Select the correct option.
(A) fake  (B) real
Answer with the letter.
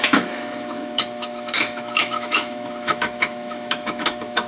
A